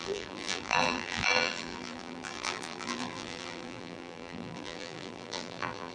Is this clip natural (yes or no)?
no